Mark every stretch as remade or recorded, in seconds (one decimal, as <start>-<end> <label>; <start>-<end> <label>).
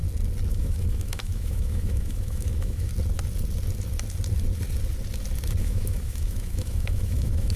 0.0-0.5 recorded; 0.5-2.9 remade; 2.9-5.6 recorded; 5.6-7.6 remade